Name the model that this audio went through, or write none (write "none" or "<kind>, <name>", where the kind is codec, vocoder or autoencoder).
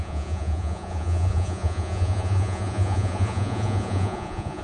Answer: vocoder, Vocos